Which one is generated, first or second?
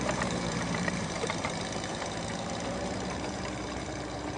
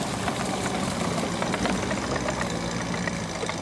first